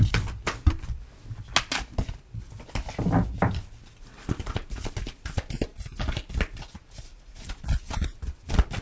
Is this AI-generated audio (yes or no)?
no